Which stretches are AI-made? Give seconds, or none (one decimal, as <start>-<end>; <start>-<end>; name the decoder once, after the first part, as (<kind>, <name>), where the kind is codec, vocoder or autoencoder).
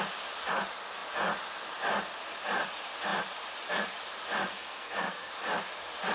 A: 4.5-5.3 (codec, SNAC)